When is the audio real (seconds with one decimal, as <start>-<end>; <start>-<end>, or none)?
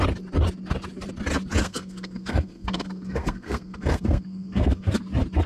0.0-1.6; 4.9-5.5